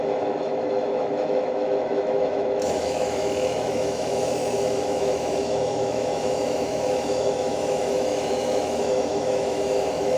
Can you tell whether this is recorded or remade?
remade